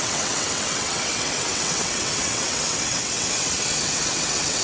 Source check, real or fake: fake